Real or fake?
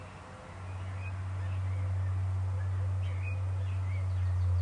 real